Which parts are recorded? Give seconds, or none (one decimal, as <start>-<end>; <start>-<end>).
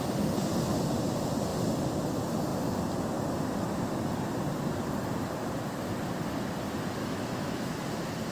0.0-7.0; 7.7-8.3